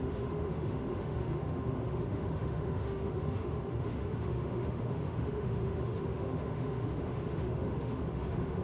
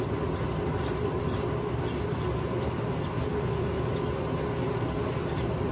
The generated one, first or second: first